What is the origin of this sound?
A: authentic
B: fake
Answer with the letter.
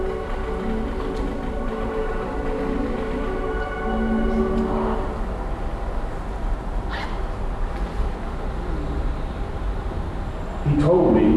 A